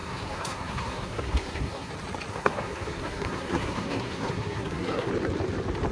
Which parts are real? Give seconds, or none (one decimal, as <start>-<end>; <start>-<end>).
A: 1.9-2.3; 5.1-5.9